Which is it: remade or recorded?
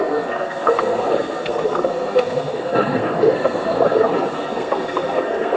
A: remade